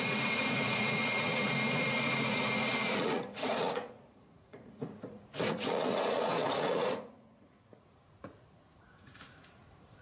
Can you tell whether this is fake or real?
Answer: fake